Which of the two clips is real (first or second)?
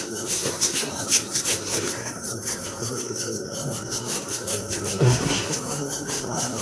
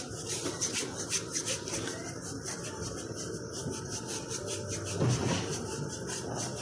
second